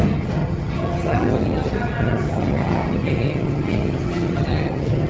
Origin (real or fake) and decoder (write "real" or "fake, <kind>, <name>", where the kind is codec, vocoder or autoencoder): fake, vocoder, HiFi-GAN